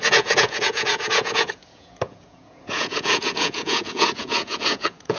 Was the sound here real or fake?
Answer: fake